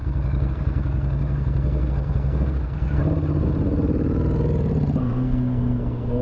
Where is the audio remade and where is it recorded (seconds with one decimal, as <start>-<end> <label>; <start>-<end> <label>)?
0.0-3.0 remade; 3.0-5.0 recorded; 5.0-6.2 remade